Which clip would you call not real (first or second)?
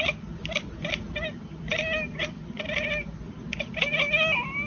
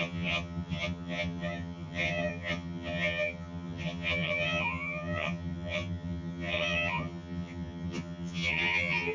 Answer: second